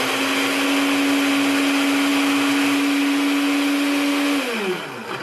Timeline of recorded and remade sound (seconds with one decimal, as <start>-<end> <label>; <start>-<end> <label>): 0.0-5.2 recorded